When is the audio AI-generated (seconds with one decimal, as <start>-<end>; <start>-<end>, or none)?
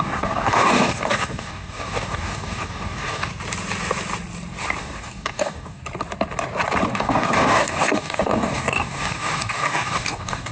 0.0-3.3; 4.8-5.8; 6.9-10.5